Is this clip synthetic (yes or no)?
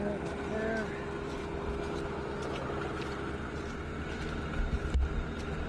no